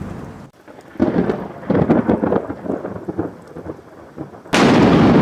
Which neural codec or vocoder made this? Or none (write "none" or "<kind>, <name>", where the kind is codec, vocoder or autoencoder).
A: none